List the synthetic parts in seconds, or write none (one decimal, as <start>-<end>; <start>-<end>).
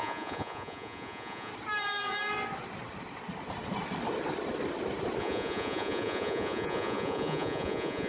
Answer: 0.0-1.5; 5.2-8.1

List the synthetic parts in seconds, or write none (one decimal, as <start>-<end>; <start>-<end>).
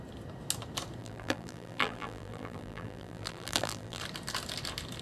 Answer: 1.0-4.0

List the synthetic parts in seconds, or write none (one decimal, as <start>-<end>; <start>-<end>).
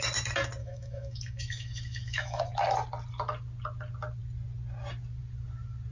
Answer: 0.6-2.4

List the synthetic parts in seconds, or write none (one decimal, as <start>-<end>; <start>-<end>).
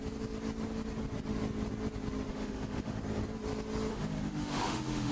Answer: 2.3-3.0; 3.9-5.1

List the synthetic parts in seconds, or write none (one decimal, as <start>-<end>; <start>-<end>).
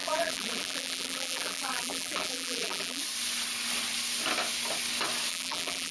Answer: 0.0-3.0; 5.3-5.9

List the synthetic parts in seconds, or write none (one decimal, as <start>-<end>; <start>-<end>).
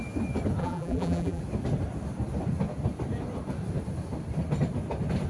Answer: 0.6-1.4